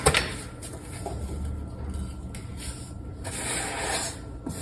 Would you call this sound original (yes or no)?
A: yes